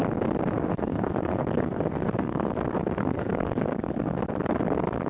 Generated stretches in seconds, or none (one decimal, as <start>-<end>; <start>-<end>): 0.7-2.5; 3.0-4.2